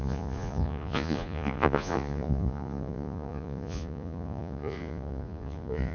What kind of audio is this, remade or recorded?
remade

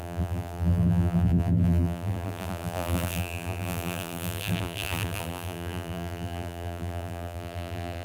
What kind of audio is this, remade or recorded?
remade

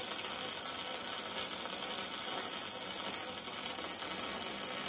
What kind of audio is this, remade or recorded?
recorded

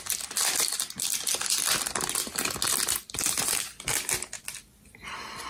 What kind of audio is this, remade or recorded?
recorded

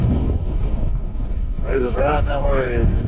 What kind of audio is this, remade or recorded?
remade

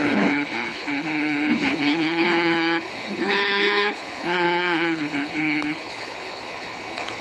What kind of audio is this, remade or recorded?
remade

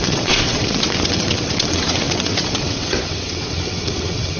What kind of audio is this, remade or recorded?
remade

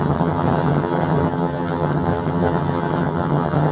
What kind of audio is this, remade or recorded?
remade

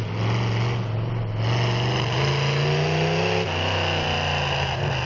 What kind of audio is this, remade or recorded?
recorded